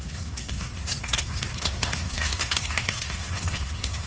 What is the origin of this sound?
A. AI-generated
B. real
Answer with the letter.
A